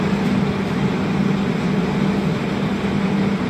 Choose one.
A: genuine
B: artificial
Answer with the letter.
A